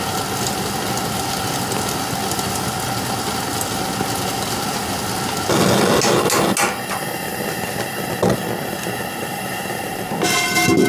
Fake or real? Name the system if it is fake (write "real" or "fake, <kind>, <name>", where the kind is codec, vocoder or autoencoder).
real